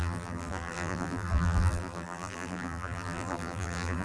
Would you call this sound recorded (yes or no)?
no